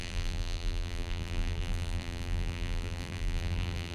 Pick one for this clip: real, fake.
fake